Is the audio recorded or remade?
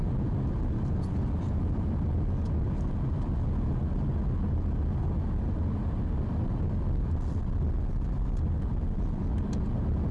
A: recorded